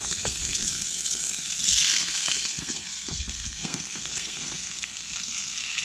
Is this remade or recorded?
remade